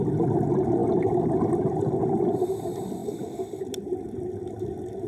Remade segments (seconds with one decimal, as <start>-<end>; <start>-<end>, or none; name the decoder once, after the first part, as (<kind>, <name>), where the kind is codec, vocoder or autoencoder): 0.8-2.0 (vocoder, BigVGAN v2); 3.0-4.0